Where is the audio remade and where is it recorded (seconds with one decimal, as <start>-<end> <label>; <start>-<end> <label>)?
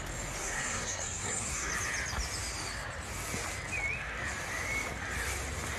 0.0-0.4 recorded; 0.4-1.7 remade; 1.7-5.8 recorded